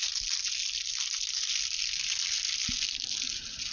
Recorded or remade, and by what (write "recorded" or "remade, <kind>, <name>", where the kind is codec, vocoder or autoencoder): recorded